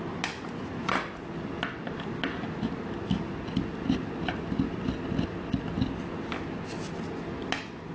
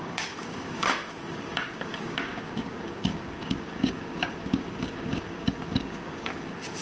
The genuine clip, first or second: first